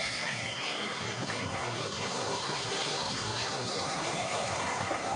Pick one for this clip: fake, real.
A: fake